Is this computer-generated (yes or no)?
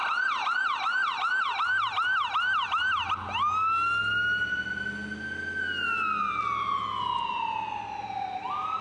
no